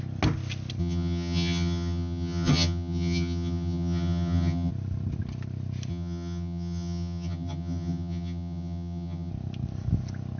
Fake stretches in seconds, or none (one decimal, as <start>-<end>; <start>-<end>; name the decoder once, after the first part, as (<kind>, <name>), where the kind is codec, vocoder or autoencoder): 0.8-4.7 (vocoder, HiFi-GAN); 5.9-9.3